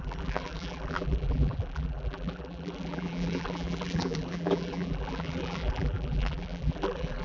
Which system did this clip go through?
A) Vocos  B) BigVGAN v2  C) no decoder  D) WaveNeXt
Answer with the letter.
B